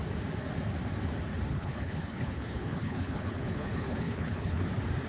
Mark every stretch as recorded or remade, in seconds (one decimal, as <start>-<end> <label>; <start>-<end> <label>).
0.0-1.5 recorded; 1.5-4.6 remade; 4.6-5.1 recorded

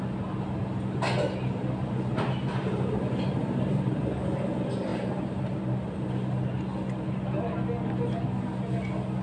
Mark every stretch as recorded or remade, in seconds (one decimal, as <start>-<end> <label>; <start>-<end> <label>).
0.0-3.4 recorded; 3.4-4.0 remade; 4.0-4.9 recorded; 4.9-5.6 remade; 5.6-9.2 recorded

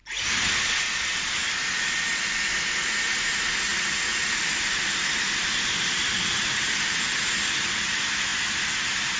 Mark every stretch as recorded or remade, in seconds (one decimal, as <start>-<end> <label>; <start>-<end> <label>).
0.0-3.7 recorded; 3.7-6.6 remade; 6.6-9.2 recorded